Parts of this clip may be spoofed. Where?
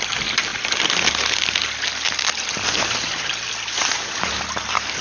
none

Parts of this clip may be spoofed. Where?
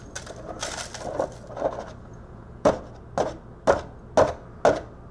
2.1-2.7 (vocoder, Vocos)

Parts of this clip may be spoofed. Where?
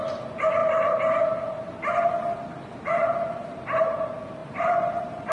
4.4-5.3 (vocoder, BigVGAN v2)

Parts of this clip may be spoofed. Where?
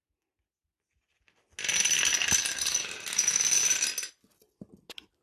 none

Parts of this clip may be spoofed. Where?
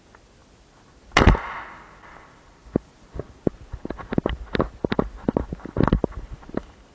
none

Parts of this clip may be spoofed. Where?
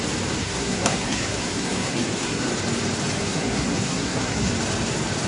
0.4-2.5 (codec, SNAC); 3.2-4.5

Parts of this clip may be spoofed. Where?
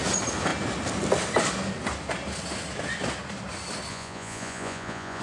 3.9-5.2 (vocoder, Vocos)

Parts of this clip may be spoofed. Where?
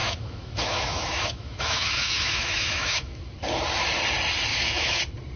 0.0-3.2 (autoencoder, DAC-VAE); 4.5-5.0